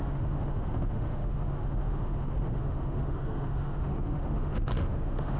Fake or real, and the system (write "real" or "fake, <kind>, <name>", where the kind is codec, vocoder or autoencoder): fake, autoencoder, DAC-VAE